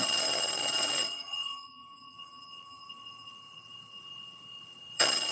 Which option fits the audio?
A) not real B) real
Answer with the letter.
A